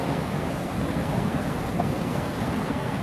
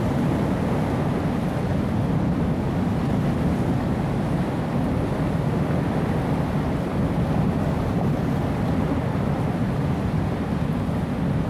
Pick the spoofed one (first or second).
first